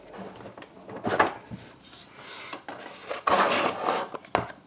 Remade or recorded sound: recorded